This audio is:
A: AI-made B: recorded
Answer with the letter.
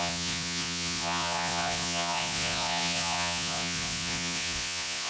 A